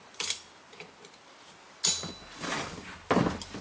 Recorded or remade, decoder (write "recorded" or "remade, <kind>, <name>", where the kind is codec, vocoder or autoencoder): recorded